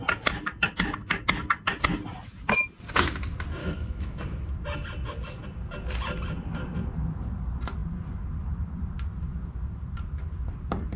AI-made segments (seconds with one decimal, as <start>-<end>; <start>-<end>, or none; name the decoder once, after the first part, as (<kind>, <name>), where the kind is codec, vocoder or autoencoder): 3.6-4.2 (autoencoder, DAC-VAE)